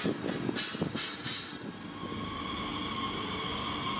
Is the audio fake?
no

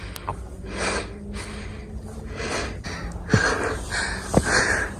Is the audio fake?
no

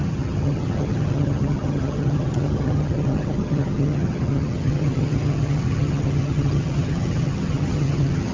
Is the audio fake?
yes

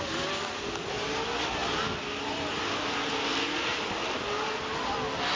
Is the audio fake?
no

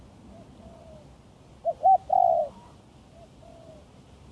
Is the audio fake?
no